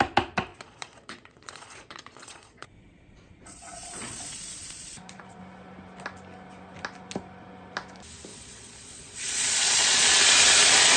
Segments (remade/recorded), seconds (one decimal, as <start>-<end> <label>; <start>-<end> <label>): 0.0-0.5 recorded; 0.5-5.4 remade; 5.4-8.3 recorded; 8.3-10.1 remade; 10.1-11.0 recorded